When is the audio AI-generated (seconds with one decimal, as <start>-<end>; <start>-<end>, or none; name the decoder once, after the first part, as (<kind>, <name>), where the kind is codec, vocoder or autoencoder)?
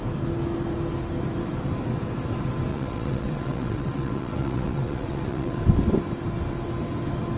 2.7-5.6 (vocoder, WaveNeXt)